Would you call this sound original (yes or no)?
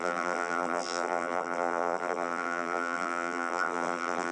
no